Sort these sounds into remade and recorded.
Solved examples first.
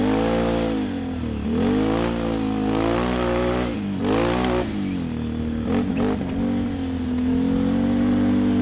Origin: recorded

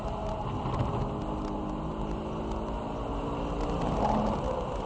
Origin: recorded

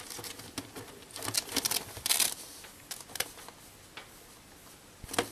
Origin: recorded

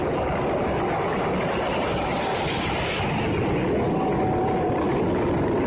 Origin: recorded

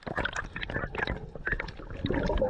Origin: recorded